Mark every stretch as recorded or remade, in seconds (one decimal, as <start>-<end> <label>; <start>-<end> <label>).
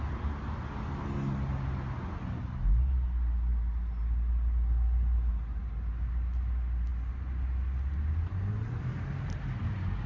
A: 0.0-10.1 recorded